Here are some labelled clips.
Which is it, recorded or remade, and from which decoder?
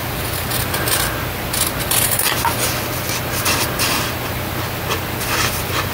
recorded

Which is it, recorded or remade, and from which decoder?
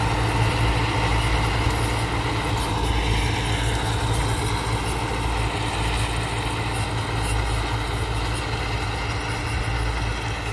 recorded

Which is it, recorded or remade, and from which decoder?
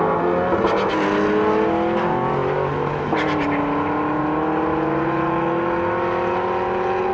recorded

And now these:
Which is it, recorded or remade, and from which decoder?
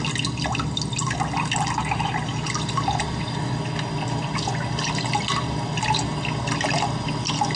recorded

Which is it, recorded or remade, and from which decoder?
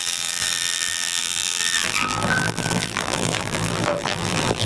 remade, vocoder, BigVGAN v2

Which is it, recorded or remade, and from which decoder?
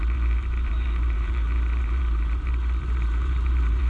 remade, vocoder, BigVGAN v2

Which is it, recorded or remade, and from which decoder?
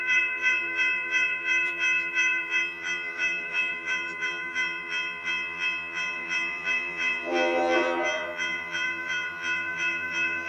remade, vocoder, BigVGAN v2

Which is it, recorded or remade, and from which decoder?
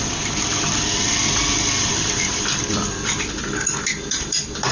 remade, vocoder, BigVGAN v2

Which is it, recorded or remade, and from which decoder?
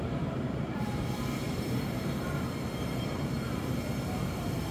remade, vocoder, BigVGAN v2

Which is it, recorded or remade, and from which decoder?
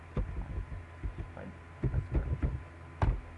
recorded